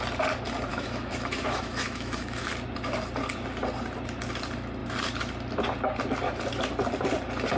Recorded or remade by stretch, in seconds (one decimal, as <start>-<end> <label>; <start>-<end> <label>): 0.0-0.7 recorded; 0.7-2.5 remade; 2.5-7.6 recorded